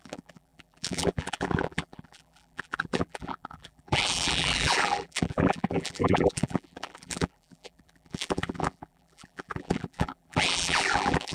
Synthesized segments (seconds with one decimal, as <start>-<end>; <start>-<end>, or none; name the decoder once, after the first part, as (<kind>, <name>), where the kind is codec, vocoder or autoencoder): 0.0-11.3 (vocoder, BigVGAN v2)